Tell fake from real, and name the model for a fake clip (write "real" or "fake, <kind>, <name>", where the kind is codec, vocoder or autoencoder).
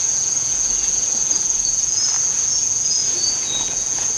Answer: fake, vocoder, Vocos